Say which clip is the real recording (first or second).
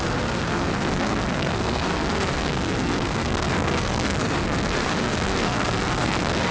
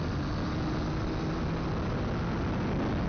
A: second